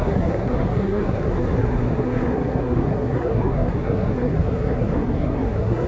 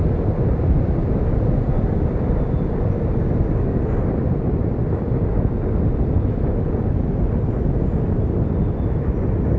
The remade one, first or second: first